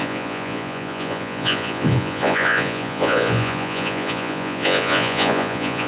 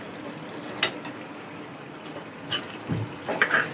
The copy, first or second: first